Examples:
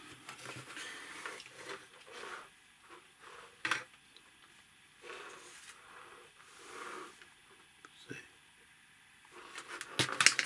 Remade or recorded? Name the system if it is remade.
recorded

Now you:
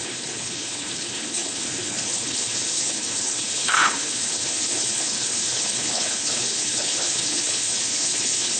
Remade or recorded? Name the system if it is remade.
remade, codec, HILCodec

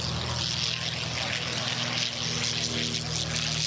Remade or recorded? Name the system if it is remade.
recorded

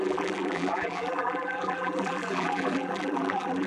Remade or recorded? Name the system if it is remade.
remade, vocoder, BigVGAN v2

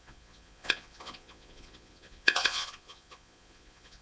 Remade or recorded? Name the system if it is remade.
remade, vocoder, Vocos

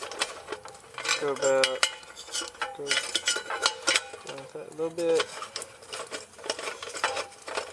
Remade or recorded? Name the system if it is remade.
recorded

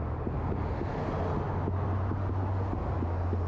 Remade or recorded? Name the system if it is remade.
recorded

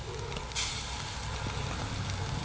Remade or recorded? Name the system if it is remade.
recorded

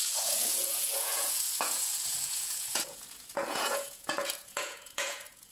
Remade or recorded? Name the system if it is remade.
remade, vocoder, Vocos